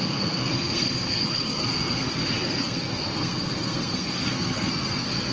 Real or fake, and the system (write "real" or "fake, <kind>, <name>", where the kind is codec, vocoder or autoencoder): fake, codec, SNAC